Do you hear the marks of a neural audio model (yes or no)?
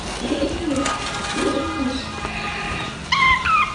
no